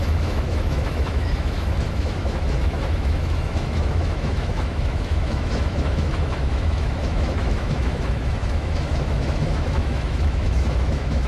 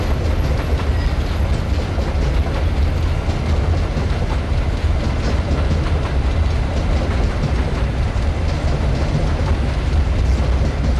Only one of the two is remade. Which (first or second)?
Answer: first